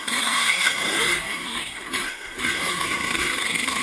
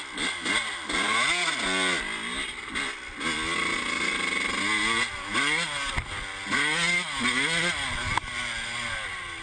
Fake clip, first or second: first